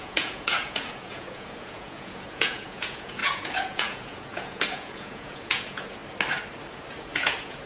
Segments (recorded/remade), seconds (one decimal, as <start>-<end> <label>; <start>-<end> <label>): 0.0-6.0 remade; 6.0-7.0 recorded; 7.0-7.7 remade